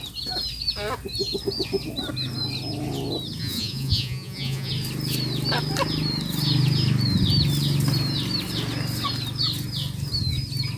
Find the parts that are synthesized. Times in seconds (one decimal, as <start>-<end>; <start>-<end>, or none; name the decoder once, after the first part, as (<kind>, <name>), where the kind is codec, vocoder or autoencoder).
3.4-4.7 (vocoder, Vocos)